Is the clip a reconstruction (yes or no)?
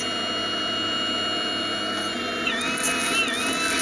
no